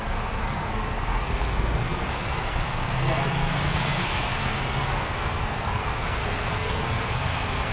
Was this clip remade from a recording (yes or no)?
yes